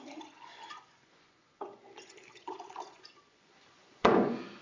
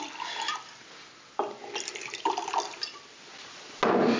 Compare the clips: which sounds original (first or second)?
second